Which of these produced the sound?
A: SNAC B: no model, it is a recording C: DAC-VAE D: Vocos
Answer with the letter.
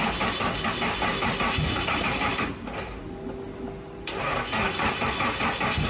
B